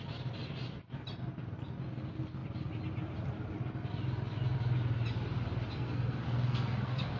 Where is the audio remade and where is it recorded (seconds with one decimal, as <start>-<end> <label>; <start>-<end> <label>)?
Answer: 0.0-5.7 recorded; 5.7-7.2 remade

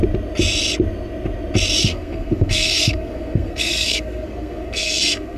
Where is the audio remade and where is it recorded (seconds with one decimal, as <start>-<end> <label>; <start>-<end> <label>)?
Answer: 0.0-1.9 recorded; 1.9-5.4 remade

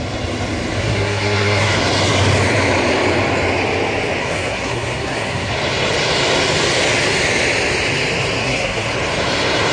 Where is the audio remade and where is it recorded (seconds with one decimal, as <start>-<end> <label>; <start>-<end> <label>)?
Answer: 0.0-0.8 recorded; 0.8-1.7 remade; 1.7-4.2 recorded; 4.2-5.5 remade; 5.5-8.4 recorded; 8.4-8.9 remade; 8.9-9.7 recorded

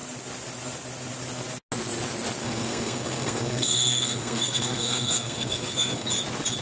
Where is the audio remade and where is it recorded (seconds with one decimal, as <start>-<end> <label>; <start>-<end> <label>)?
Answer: 0.0-2.4 recorded; 2.4-6.1 remade; 6.1-6.6 recorded

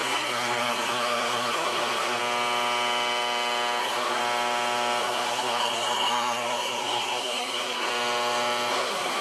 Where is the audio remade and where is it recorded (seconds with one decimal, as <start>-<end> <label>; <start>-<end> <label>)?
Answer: 0.0-2.2 remade; 2.2-3.8 recorded; 3.8-4.2 remade; 4.2-5.0 recorded; 5.0-7.9 remade; 7.9-8.7 recorded; 8.7-9.2 remade

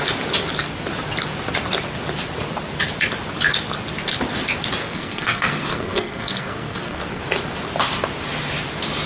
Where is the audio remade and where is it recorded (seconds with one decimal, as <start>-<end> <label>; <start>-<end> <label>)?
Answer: 0.0-4.8 recorded; 4.8-7.2 remade; 7.2-9.1 recorded